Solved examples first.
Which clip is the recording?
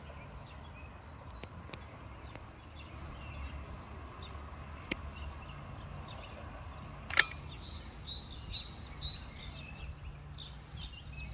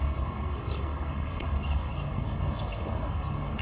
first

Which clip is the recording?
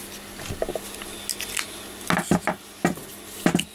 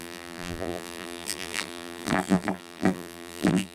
first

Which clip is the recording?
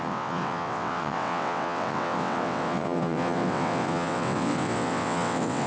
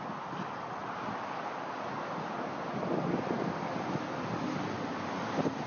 second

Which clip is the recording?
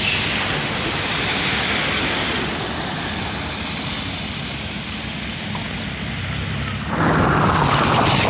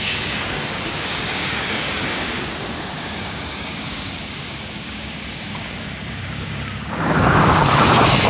first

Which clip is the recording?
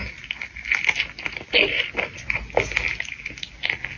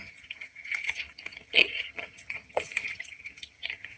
first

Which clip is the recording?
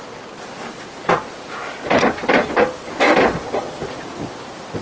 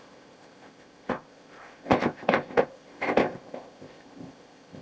first